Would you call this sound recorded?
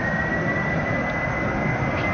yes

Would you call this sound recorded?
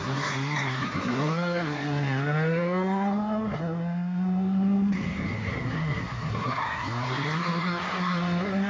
no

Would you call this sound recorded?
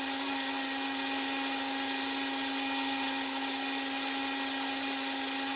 yes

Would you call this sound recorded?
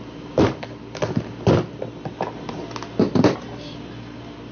yes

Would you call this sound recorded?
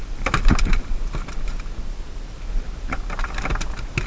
yes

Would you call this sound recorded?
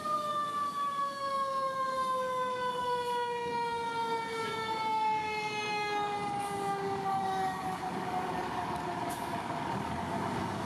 no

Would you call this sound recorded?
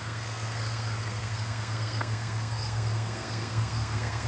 no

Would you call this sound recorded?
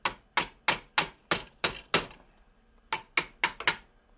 yes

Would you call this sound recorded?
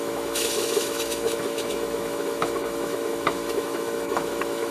no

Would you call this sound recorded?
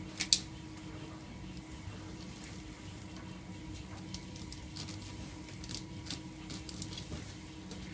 yes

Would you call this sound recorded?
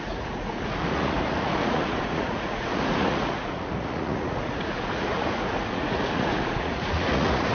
no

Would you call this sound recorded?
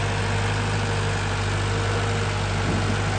yes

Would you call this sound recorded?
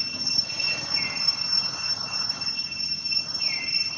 yes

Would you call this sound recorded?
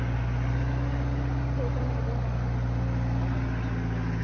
yes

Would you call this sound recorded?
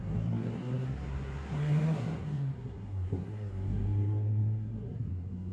no